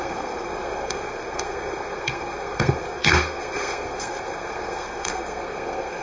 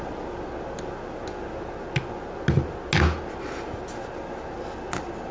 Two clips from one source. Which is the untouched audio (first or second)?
second